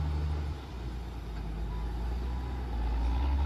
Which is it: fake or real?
real